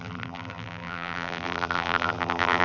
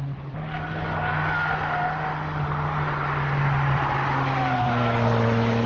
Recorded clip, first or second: second